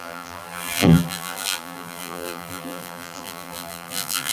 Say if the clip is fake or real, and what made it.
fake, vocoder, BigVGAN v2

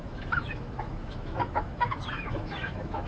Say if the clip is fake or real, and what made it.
fake, autoencoder, DAC-VAE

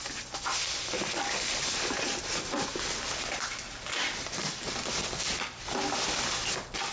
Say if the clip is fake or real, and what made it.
real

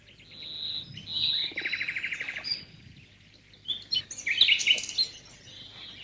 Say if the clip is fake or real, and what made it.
real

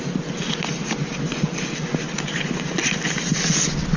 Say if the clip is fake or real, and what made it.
real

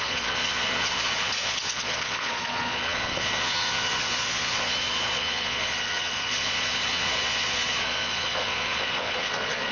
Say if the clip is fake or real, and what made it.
fake, vocoder, Vocos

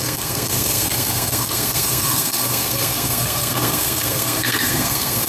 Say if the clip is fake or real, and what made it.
fake, codec, SNAC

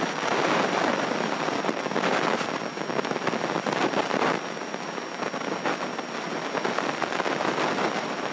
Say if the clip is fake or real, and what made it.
real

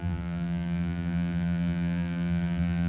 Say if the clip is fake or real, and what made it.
fake, vocoder, BigVGAN v2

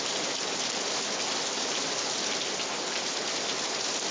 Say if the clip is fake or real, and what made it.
real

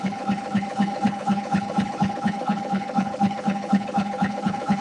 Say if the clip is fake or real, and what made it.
fake, codec, HILCodec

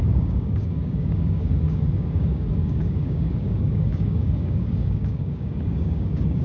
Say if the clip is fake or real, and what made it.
fake, codec, DAC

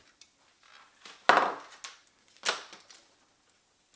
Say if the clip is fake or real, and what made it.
real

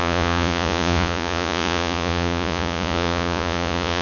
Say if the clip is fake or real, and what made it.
fake, vocoder, Vocos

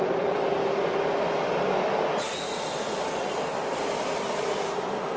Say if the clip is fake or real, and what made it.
real